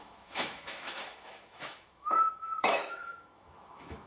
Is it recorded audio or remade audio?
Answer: remade